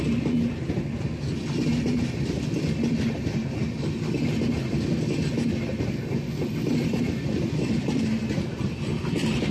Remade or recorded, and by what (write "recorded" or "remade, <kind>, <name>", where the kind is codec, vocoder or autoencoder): recorded